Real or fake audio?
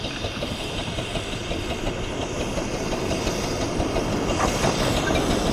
real